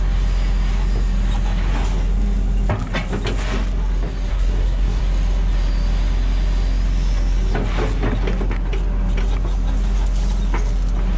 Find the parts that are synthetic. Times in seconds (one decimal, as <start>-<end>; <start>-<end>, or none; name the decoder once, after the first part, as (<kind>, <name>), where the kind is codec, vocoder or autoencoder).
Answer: 4.3-5.0 (codec, SNAC)